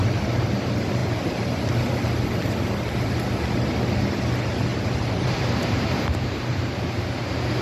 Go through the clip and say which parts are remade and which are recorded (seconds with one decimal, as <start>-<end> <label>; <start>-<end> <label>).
0.0-4.7 recorded; 4.7-7.0 remade; 7.0-7.6 recorded